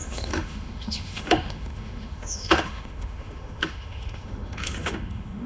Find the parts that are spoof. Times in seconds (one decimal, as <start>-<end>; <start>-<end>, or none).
0.0-5.5